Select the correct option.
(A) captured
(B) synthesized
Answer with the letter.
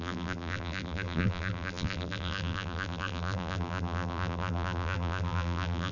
B